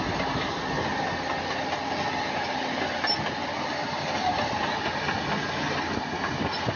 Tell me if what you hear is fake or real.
real